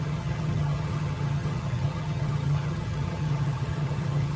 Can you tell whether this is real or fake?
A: fake